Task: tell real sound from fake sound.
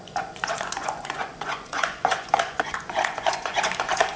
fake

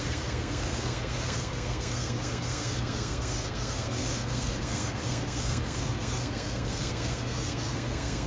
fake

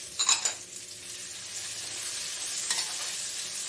real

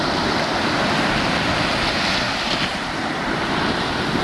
real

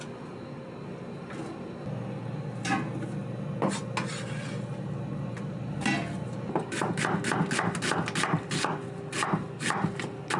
real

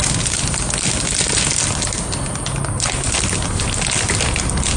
real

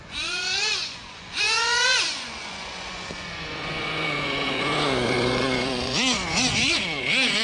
fake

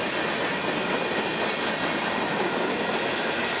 real